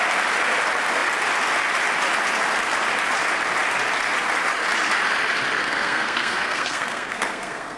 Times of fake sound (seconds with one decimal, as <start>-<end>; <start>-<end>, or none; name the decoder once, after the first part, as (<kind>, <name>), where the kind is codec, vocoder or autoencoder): 5.6-7.8 (codec, SNAC)